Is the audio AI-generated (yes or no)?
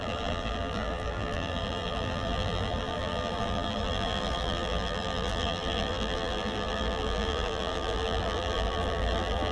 yes